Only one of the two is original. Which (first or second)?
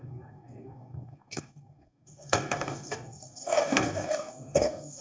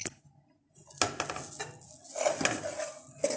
second